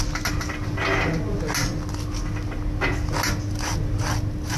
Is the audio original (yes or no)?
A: yes